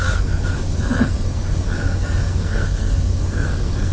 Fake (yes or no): yes